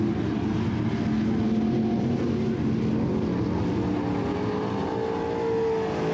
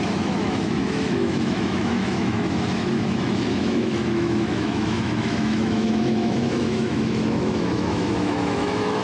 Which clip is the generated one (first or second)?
second